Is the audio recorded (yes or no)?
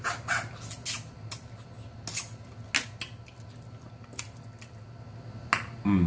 yes